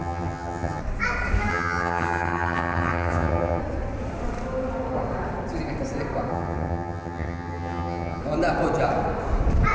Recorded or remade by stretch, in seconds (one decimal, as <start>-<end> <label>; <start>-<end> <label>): 0.0-0.8 remade; 0.8-1.5 recorded; 1.5-3.6 remade; 3.6-6.3 recorded; 6.3-8.2 remade; 8.2-9.7 recorded